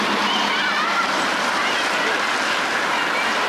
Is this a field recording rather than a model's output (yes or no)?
yes